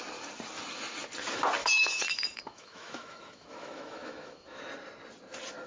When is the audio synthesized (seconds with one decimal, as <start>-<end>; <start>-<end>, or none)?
1.6-4.6